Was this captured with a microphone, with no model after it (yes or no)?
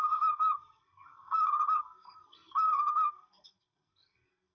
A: no